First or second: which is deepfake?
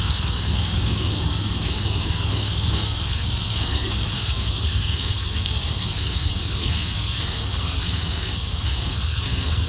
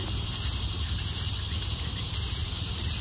first